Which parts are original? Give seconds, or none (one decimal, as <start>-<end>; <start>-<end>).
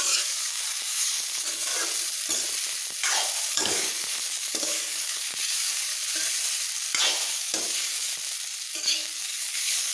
1.7-3.5; 5.9-7.3; 8.1-8.6